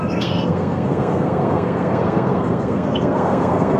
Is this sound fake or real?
fake